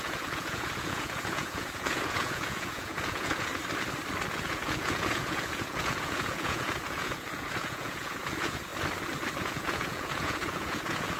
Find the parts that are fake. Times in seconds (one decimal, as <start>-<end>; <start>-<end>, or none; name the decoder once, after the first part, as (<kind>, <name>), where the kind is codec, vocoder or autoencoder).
0.0-3.5 (vocoder, Vocos); 4.3-8.7; 9.4-11.2